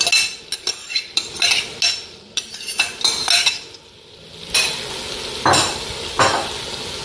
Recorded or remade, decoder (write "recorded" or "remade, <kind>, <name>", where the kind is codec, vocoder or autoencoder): recorded